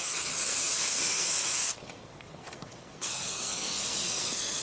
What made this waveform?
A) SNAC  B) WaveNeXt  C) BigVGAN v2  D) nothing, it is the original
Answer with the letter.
A